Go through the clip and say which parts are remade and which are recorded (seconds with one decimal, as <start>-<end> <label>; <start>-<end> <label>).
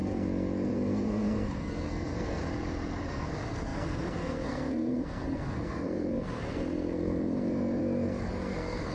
0.0-2.4 remade; 2.4-3.1 recorded; 3.1-8.9 remade